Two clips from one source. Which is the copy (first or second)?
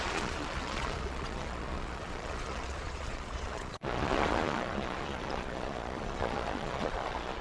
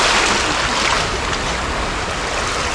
first